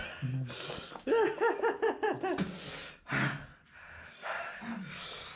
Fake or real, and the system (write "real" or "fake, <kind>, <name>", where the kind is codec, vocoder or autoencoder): real